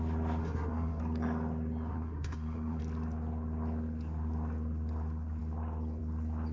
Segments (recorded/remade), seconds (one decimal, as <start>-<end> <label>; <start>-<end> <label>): 0.0-0.4 recorded; 0.4-1.0 remade; 1.0-1.9 recorded; 1.9-2.8 remade; 2.8-6.5 recorded